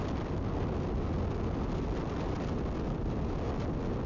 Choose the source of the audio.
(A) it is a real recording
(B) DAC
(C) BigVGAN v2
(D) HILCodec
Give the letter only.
A